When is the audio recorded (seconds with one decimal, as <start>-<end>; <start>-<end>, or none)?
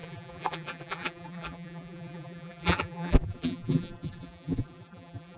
none